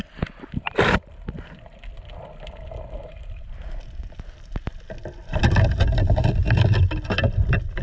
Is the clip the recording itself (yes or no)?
yes